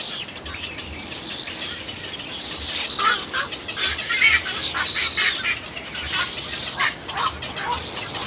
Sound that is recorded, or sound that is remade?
recorded